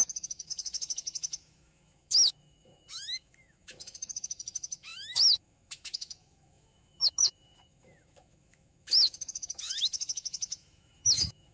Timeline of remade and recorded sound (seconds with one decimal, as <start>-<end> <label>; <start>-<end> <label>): 0.0-11.5 remade